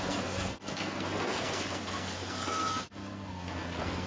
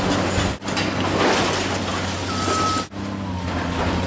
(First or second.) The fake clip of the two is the first